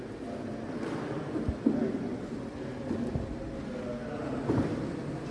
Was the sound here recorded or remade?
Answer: recorded